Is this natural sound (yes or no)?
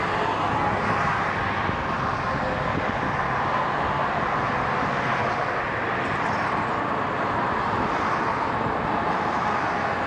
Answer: yes